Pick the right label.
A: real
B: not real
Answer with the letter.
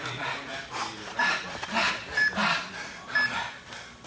A